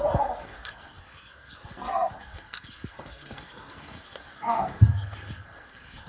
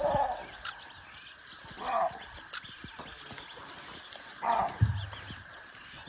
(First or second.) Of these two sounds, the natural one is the second